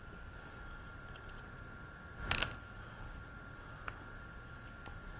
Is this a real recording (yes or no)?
yes